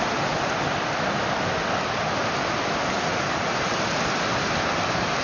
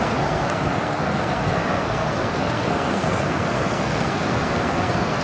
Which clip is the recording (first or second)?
first